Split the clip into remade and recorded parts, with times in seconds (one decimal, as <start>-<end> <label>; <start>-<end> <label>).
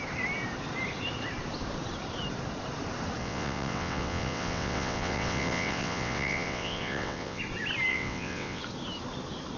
0.0-3.2 recorded; 3.2-7.4 remade; 7.4-7.9 recorded; 7.9-8.6 remade; 8.6-9.6 recorded